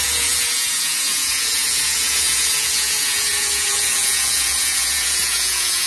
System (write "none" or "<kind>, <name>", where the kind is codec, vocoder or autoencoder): vocoder, Vocos